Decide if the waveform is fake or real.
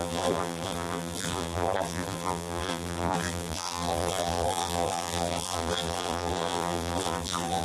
fake